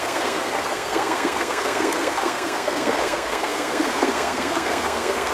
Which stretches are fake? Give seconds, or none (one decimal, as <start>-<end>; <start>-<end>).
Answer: 0.0-5.3